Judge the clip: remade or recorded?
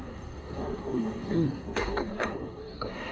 remade